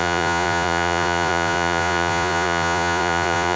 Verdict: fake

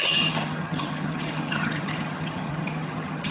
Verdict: fake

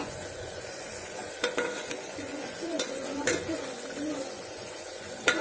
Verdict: fake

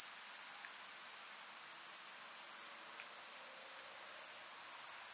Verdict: real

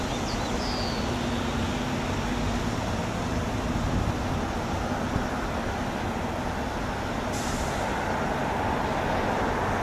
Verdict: real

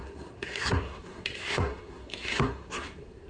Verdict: fake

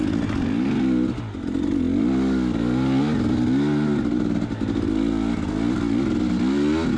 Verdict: real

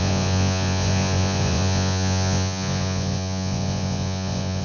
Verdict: fake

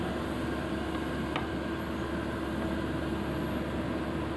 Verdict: real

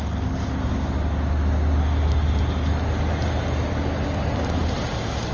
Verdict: real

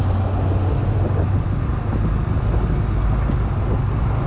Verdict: real